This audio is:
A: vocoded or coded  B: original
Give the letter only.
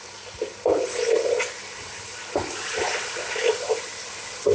B